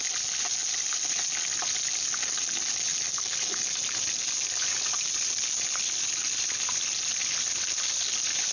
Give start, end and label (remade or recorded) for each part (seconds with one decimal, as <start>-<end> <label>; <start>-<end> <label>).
0.0-8.5 recorded